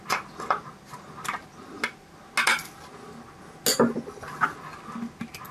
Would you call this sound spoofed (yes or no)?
no